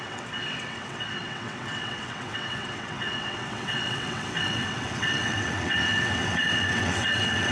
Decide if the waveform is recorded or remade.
remade